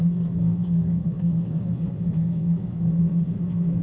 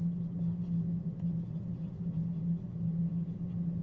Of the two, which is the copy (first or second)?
first